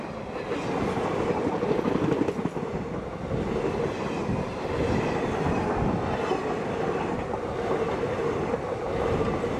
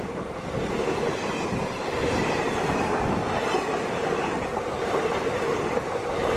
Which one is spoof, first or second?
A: second